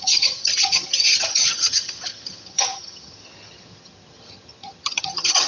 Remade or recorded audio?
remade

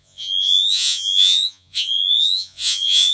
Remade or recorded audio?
remade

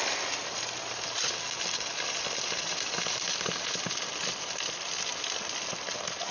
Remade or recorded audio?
recorded